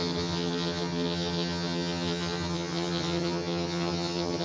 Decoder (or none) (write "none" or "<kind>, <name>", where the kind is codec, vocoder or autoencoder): vocoder, HiFi-GAN